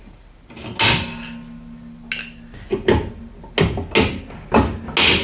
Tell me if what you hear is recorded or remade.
recorded